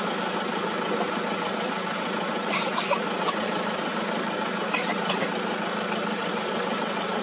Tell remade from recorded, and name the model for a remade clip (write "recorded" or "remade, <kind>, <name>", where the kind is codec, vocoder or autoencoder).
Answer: recorded